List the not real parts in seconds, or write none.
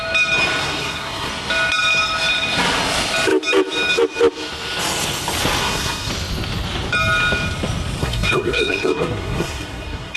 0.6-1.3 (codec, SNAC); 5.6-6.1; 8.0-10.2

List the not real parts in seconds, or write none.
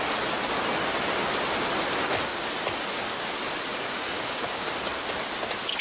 3.7-4.6 (codec, DAC)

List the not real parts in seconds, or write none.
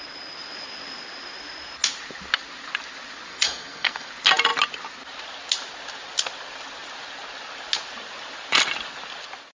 3.3-4.1 (codec, SNAC)